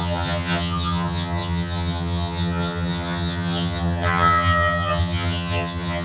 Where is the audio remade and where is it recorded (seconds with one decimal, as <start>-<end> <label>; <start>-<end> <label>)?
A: 0.0-6.0 remade